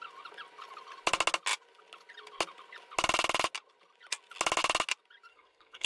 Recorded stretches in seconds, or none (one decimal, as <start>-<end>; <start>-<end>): 0.0-5.3